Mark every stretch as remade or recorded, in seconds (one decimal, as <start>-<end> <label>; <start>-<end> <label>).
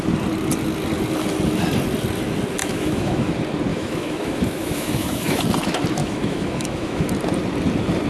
0.0-2.6 recorded; 2.6-3.3 remade; 3.3-3.7 recorded; 3.7-5.4 remade; 5.4-6.0 recorded; 6.0-7.1 remade; 7.1-8.1 recorded